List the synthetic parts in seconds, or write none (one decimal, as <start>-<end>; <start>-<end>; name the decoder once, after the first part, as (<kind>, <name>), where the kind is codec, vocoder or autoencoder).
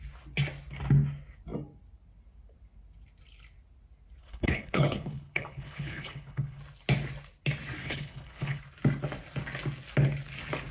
4.2-6.6 (codec, HILCodec); 7.8-8.6